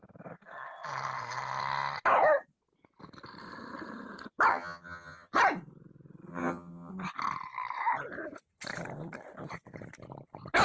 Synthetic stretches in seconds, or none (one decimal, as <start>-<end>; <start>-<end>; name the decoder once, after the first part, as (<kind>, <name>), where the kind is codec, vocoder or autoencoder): 4.5-5.3 (vocoder, HiFi-GAN); 6.3-6.9